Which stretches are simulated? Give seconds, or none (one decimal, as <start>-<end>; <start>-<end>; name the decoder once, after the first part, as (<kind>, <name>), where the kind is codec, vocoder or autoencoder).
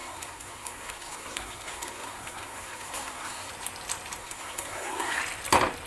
0.0-3.5 (codec, SNAC); 4.2-5.2